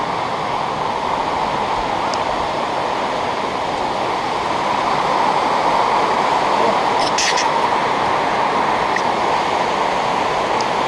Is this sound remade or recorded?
recorded